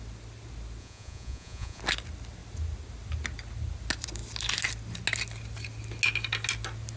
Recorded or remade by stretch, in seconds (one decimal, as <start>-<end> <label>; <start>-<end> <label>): 0.0-0.8 recorded; 0.8-1.8 remade; 1.8-7.0 recorded